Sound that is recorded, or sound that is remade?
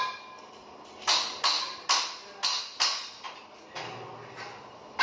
recorded